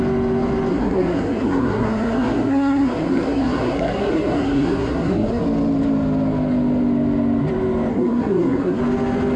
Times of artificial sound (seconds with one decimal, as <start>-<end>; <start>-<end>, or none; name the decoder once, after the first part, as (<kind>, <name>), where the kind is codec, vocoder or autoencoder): 0.7-5.4 (codec, SNAC); 7.9-8.8